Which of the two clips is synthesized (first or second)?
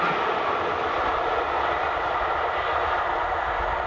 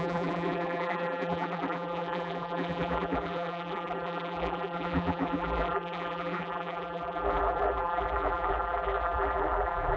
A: second